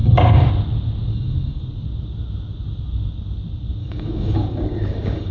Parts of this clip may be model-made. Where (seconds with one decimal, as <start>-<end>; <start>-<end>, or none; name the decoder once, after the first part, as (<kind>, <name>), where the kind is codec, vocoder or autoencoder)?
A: 0.0-0.5 (codec, DAC); 1.1-1.6; 3.8-5.3